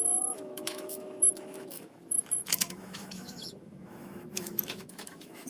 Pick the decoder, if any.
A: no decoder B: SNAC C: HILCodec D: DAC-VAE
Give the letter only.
D